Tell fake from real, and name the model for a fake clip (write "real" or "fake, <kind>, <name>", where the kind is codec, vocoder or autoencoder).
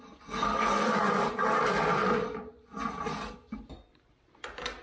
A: real